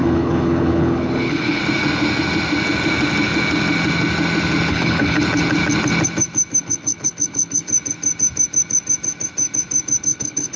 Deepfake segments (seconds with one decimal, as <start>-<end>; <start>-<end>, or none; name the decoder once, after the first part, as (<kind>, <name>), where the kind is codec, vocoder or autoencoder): 0.0-1.6 (codec, HILCodec); 4.7-5.2; 6.6-7.7; 10.0-10.6